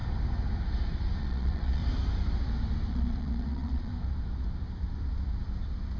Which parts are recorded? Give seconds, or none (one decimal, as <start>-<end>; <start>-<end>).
0.0-1.2; 1.8-2.9; 3.9-6.0